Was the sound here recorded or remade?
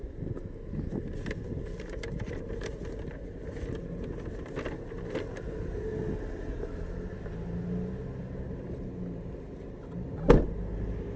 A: recorded